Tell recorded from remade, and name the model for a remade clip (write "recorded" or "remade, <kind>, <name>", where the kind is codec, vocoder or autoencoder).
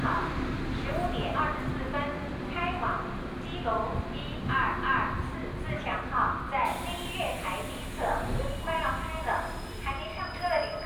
recorded